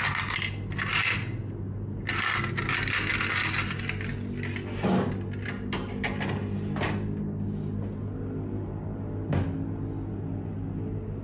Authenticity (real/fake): real